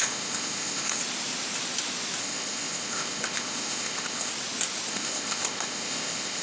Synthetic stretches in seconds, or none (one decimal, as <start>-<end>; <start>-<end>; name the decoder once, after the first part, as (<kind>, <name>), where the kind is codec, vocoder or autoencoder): 0.0-1.0 (codec, ZipCodec); 2.2-4.3; 4.9-6.4